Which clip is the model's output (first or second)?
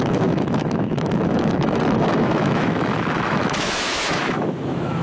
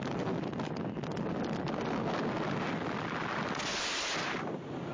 first